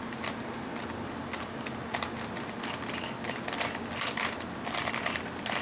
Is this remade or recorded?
recorded